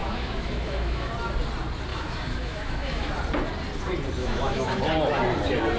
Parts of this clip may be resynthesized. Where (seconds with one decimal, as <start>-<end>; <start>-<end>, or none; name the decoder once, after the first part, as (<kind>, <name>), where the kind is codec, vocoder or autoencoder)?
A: 0.0-1.1 (autoencoder, DAC-VAE); 1.9-3.1; 4.2-4.8